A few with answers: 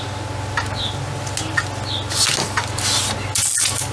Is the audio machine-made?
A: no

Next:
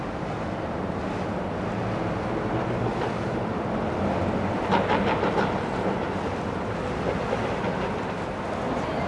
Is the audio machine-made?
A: no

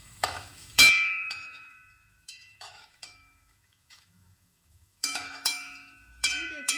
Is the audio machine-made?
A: yes